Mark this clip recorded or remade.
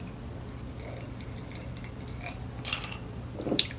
recorded